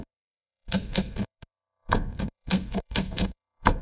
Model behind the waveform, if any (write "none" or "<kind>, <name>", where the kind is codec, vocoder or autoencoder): codec, SNAC